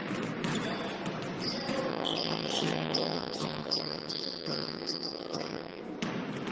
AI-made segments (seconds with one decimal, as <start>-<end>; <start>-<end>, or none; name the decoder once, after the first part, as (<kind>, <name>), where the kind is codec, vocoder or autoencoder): 1.9-5.8 (vocoder, HiFi-GAN)